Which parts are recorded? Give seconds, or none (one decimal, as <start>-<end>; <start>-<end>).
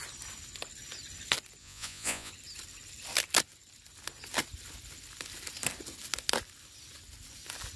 0.0-1.6; 2.3-7.8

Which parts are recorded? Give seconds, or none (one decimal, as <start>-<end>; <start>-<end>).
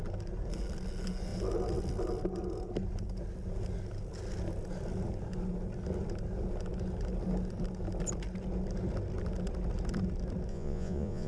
0.0-10.5